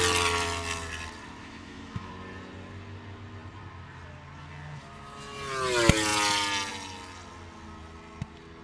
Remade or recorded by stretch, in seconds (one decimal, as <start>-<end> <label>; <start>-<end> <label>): 0.0-1.4 recorded; 1.4-2.1 remade; 2.1-8.6 recorded

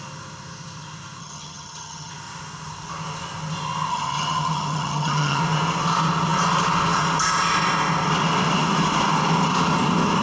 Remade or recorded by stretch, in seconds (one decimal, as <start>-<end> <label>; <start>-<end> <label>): 0.0-1.2 recorded; 1.2-2.1 remade; 2.1-3.9 recorded; 3.9-5.4 remade; 5.4-10.2 recorded

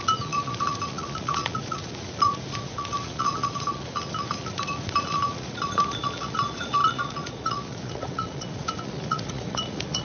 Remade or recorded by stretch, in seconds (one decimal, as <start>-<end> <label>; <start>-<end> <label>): 0.0-10.0 remade

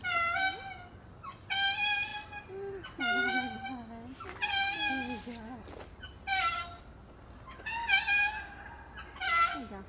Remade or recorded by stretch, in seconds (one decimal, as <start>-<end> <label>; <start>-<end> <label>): 0.0-9.9 recorded

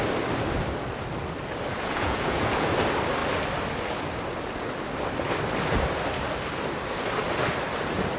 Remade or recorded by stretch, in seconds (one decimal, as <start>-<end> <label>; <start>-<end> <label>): 0.0-1.7 recorded; 1.7-2.7 remade; 2.7-8.2 recorded

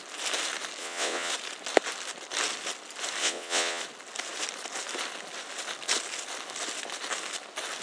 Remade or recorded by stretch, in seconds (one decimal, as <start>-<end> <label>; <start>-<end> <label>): 0.0-0.8 recorded; 0.8-1.3 remade; 1.3-3.2 recorded; 3.2-3.8 remade; 3.8-7.8 recorded